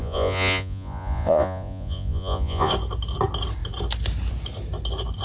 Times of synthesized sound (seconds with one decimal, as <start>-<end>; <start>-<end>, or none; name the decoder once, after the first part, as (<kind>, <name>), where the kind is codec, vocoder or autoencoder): 0.0-2.7 (vocoder, Vocos)